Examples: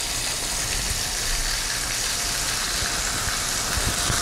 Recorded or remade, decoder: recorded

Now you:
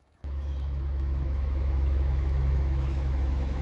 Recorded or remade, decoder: remade, autoencoder, DAC-VAE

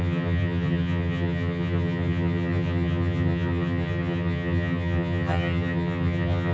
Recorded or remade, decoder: remade, vocoder, HiFi-GAN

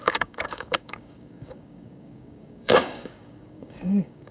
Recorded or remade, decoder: remade, codec, DAC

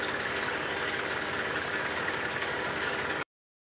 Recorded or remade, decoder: remade, codec, DAC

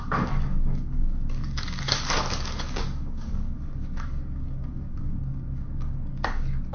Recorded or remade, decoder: remade, codec, DAC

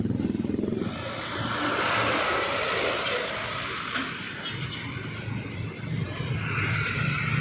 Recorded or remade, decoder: recorded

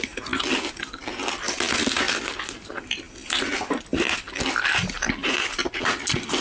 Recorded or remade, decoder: recorded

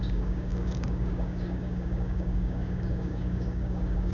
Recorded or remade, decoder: remade, codec, DAC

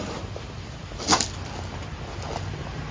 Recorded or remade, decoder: recorded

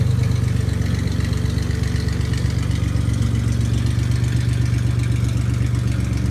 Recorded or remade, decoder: recorded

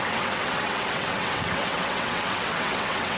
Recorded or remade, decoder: remade, vocoder, WaveNeXt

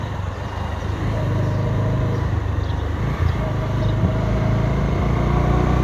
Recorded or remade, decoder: recorded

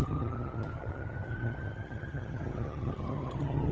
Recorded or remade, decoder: remade, vocoder, HiFi-GAN